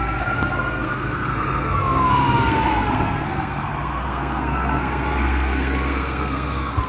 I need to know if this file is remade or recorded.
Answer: remade